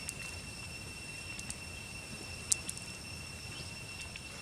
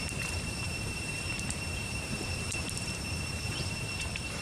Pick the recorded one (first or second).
first